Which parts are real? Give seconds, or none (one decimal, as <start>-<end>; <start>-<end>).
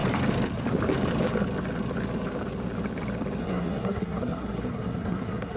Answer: 0.0-3.4